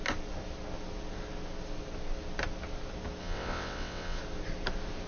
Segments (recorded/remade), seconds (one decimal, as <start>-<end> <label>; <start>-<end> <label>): 0.0-3.2 recorded; 3.2-4.2 remade; 4.2-5.1 recorded

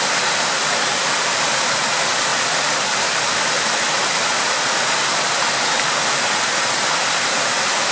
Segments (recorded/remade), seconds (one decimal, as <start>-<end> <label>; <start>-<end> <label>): 0.0-7.9 recorded

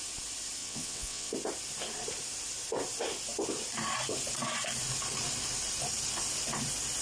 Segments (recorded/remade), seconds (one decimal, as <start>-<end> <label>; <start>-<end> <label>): 0.0-0.6 recorded; 0.6-1.3 remade; 1.3-7.0 recorded